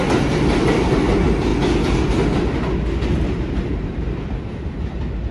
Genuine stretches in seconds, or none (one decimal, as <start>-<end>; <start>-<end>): 0.0-5.3